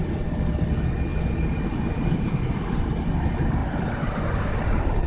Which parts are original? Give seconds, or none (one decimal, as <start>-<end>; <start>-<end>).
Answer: 0.0-1.1; 2.8-3.6